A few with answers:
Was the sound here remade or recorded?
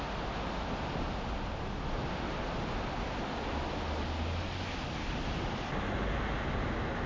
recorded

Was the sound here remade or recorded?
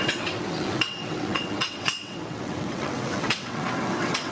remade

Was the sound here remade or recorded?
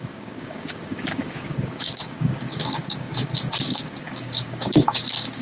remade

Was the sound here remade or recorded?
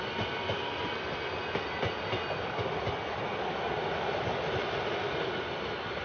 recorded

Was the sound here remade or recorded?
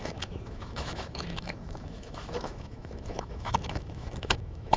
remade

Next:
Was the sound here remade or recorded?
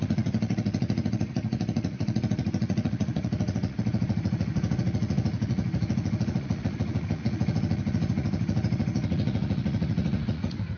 remade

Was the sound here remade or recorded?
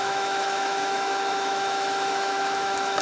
remade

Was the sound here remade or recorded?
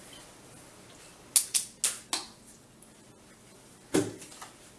recorded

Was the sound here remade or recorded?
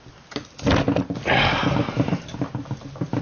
recorded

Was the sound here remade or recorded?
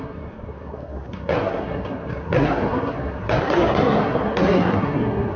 remade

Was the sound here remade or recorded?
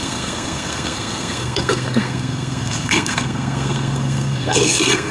remade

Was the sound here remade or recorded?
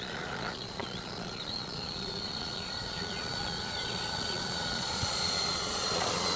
remade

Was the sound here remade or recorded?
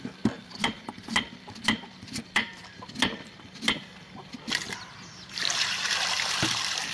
remade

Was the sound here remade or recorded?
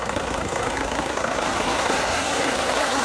remade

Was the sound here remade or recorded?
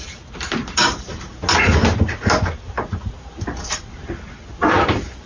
remade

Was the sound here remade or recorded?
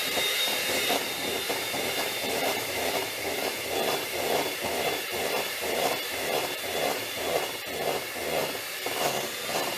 remade